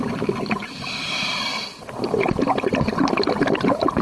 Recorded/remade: recorded